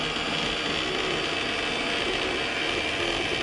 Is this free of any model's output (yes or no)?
yes